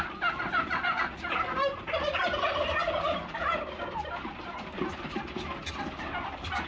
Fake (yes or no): no